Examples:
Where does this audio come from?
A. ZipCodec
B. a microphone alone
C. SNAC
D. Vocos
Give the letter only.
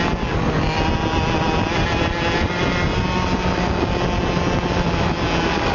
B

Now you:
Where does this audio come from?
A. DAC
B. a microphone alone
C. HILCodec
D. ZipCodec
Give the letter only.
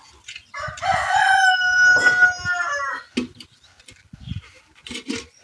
B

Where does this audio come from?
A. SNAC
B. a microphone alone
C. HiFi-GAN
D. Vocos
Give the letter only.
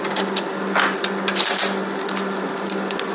B